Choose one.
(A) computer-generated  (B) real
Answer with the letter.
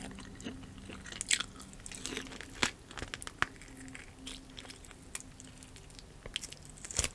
B